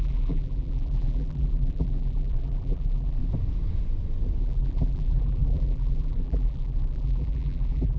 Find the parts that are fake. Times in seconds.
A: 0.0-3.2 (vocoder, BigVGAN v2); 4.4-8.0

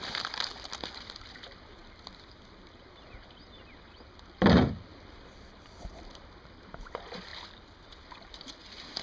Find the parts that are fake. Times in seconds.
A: none

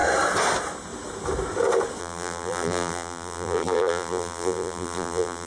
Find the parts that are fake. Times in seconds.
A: 2.0-5.5 (vocoder, BigVGAN v2)